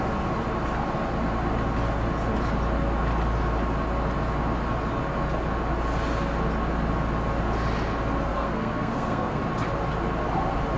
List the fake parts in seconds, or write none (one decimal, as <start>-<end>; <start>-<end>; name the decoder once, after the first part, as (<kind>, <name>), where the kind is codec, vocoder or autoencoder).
8.3-9.4 (codec, SNAC)